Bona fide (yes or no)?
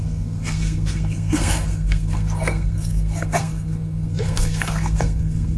no